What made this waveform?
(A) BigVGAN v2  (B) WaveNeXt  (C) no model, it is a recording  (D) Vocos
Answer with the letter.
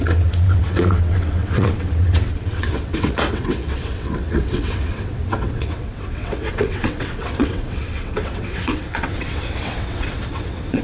B